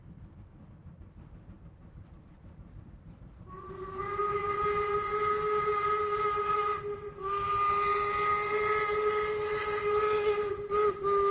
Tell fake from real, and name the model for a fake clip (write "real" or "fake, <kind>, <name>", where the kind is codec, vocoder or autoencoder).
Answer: real